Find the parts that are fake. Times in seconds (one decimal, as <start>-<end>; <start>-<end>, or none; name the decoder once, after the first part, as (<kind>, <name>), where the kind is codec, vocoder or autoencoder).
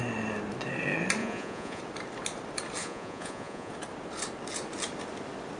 1.2-1.8 (vocoder, Vocos); 2.8-3.7